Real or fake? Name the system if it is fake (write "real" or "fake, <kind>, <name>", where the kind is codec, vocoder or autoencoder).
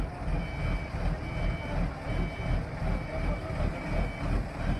real